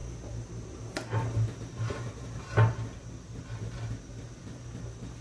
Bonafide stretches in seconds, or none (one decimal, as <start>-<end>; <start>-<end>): 0.0-5.2